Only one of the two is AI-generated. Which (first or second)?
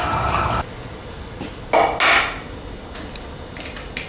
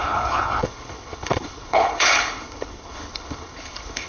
second